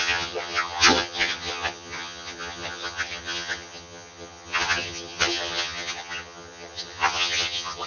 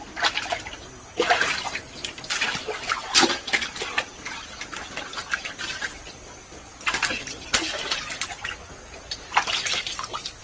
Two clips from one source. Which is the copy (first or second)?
first